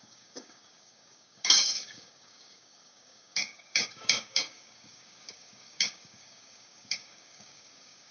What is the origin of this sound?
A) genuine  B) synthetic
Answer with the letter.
B